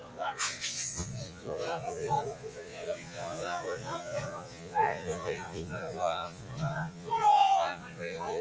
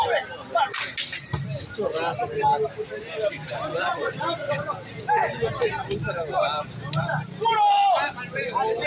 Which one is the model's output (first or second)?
first